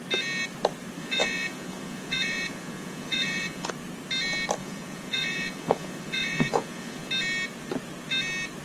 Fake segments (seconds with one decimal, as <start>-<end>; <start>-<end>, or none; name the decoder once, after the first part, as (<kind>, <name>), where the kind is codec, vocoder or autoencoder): 1.0-3.7 (vocoder, Vocos); 4.6-7.1